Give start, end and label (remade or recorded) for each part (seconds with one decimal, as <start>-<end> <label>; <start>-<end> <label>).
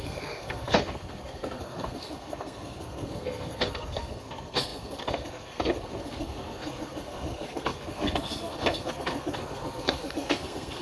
0.0-10.8 remade